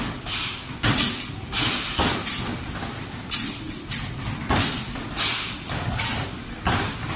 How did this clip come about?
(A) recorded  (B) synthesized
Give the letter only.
A